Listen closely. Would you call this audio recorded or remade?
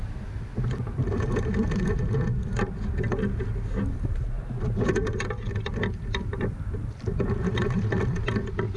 recorded